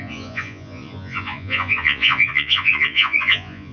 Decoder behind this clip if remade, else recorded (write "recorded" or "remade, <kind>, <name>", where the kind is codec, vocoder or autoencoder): remade, vocoder, Vocos